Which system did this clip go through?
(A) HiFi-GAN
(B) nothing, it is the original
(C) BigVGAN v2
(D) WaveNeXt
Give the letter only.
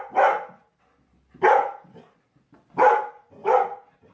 B